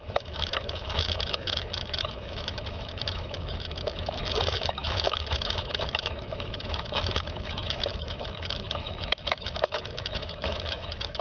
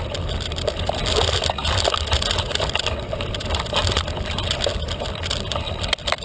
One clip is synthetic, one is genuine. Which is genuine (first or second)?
second